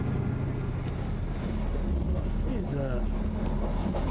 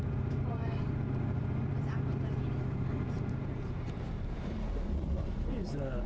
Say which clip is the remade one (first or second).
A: second